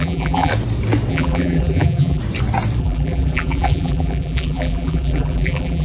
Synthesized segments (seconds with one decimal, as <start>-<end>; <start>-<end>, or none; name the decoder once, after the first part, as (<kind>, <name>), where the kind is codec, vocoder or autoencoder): 0.0-0.5 (vocoder, BigVGAN v2); 1.1-2.2; 2.8-5.8